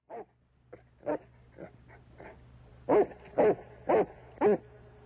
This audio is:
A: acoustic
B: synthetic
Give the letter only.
A